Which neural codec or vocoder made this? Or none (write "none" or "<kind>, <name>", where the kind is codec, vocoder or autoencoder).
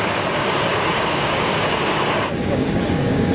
codec, DAC